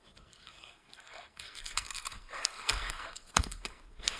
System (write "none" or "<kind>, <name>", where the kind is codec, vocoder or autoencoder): codec, SNAC